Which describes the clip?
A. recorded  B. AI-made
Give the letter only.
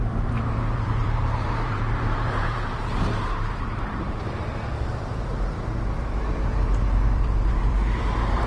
B